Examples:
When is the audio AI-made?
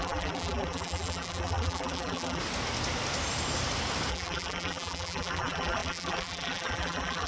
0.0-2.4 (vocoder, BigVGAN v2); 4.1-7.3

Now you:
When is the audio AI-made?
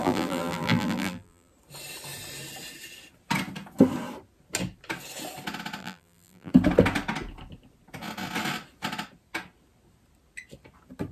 0.0-1.5 (vocoder, BigVGAN v2); 5.8-6.5